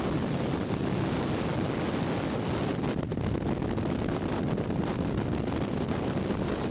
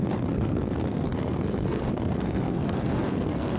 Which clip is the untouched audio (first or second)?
first